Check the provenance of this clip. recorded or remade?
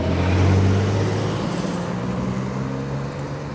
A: recorded